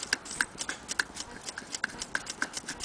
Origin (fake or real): real